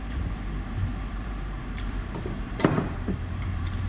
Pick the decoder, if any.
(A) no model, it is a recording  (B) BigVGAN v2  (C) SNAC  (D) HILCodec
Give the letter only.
B